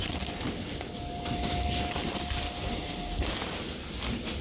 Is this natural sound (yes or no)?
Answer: yes